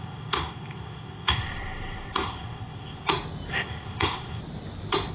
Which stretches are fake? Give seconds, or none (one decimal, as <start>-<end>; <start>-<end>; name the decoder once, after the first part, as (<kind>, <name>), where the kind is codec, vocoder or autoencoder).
0.0-3.1 (codec, ZipCodec); 3.5-4.4